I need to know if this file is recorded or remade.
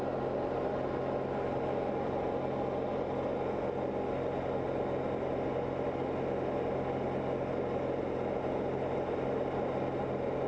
recorded